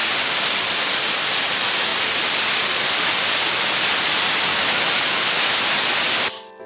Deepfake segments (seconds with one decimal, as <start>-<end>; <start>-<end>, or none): 4.5-5.6

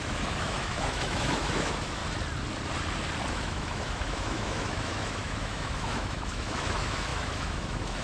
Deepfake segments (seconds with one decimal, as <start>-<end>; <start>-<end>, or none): 0.0-2.0; 3.3-8.0

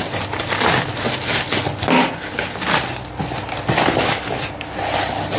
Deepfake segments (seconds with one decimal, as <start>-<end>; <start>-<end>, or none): none

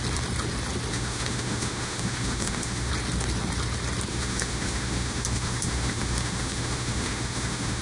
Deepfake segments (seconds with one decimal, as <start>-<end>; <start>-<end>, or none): 0.9-2.9; 4.1-7.8

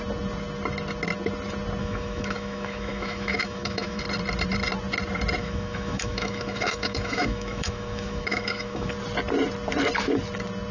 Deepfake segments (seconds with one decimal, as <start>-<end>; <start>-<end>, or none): 1.8-4.0; 5.4-8.9

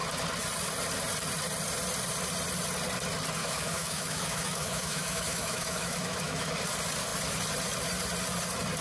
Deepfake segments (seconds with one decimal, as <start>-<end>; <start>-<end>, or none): 3.4-6.5